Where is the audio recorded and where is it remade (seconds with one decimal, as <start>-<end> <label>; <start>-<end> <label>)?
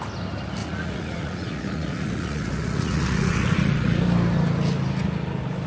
0.0-0.6 recorded; 0.6-4.0 remade; 4.0-5.7 recorded